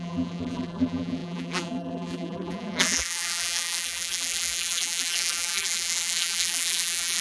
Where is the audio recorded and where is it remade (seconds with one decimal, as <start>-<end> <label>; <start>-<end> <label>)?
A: 0.0-7.2 remade